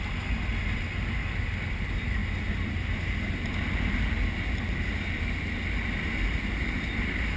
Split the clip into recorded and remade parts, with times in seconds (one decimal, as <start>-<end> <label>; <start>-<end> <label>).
0.0-7.4 recorded